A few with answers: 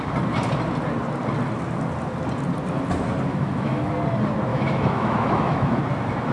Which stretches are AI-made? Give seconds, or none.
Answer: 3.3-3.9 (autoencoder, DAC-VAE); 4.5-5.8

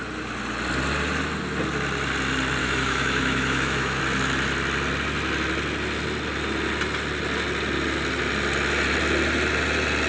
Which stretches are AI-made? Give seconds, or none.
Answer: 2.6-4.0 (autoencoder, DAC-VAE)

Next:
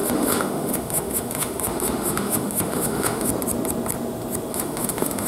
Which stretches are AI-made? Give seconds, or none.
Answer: 0.0-3.3 (autoencoder, DAC-VAE); 4.5-5.3

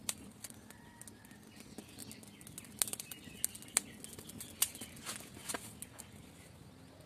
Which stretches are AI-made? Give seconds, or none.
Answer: none

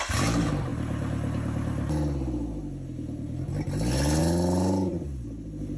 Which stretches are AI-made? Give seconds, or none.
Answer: none

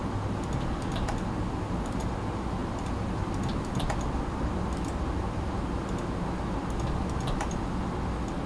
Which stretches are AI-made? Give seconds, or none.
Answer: none

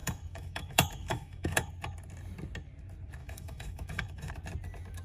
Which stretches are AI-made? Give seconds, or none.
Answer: 0.0-1.7 (autoencoder, DAC-VAE); 3.2-4.3